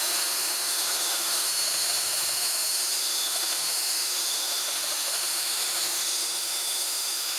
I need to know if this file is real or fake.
fake